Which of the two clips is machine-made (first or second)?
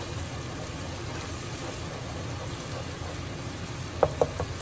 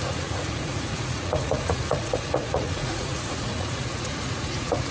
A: second